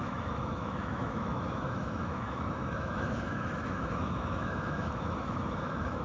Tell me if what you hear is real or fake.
fake